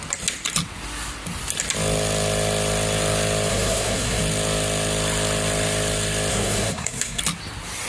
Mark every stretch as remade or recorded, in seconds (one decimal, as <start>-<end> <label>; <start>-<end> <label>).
0.0-3.5 recorded; 3.5-4.2 remade; 4.2-6.3 recorded; 6.3-7.2 remade; 7.2-7.9 recorded